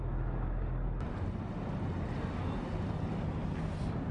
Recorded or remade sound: recorded